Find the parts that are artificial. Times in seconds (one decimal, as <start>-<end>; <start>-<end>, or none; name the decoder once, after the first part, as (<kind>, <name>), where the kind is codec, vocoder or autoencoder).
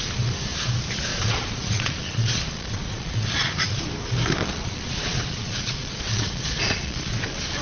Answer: 1.1-3.8 (vocoder, Vocos); 4.4-7.6